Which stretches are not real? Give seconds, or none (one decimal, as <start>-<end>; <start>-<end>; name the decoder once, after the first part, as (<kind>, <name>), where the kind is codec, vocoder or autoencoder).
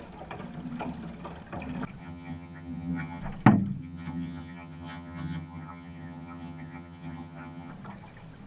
2.0-3.2 (vocoder, HiFi-GAN); 3.8-7.7